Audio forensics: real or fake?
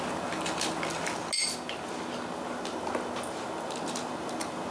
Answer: real